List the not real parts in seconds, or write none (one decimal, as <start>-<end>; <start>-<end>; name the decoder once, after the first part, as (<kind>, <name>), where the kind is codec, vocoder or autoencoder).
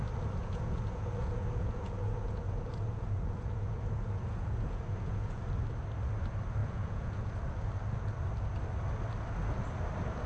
0.4-5.4 (vocoder, Vocos); 6.6-7.4